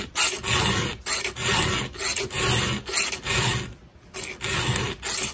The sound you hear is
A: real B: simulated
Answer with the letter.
A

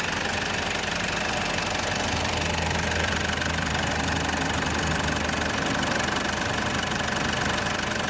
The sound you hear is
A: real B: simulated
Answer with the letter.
B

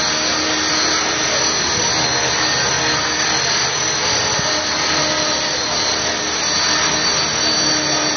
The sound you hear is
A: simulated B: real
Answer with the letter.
B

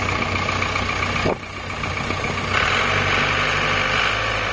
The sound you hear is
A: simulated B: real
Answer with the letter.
B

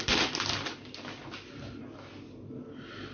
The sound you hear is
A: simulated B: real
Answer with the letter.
B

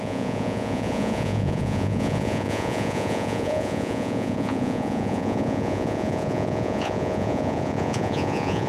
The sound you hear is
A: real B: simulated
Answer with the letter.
B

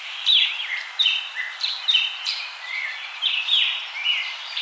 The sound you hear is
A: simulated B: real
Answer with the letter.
A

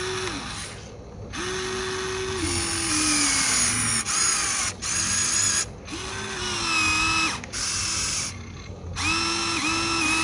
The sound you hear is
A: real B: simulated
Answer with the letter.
A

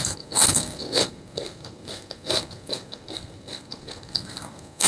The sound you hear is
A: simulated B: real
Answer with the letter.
A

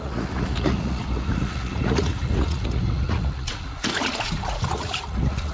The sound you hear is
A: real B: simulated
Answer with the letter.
B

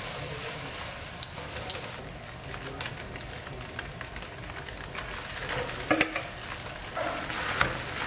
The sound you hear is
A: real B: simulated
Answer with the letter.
A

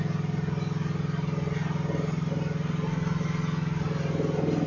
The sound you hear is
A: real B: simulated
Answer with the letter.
A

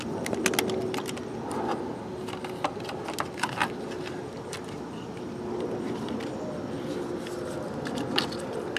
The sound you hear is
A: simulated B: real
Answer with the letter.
B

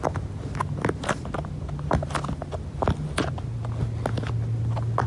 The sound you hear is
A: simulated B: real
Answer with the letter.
B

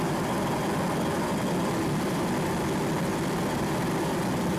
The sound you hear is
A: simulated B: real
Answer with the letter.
B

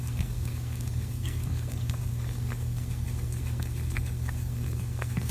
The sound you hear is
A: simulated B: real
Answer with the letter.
A